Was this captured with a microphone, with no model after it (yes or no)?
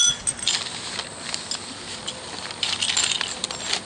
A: yes